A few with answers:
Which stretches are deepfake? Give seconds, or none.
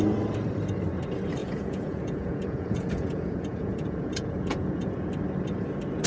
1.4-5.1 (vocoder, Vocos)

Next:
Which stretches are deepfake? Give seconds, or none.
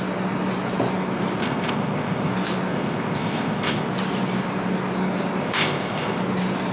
1.4-2.3 (codec, ZipCodec); 2.7-3.9; 5.4-6.2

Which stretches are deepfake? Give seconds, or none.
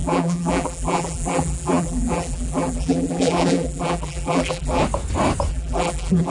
0.0-4.8 (vocoder, BigVGAN v2); 5.5-6.3